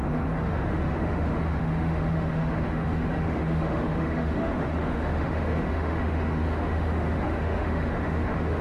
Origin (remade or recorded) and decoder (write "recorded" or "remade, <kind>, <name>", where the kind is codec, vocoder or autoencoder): remade, autoencoder, DAC-VAE